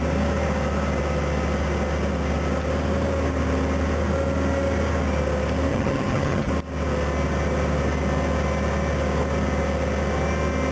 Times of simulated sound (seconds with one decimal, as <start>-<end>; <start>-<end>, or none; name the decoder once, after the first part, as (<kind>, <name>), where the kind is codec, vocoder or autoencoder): 5.7-6.5 (vocoder, HiFi-GAN)